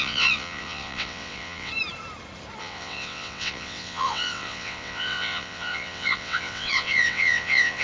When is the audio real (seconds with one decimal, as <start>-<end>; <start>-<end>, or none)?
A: 1.7-2.6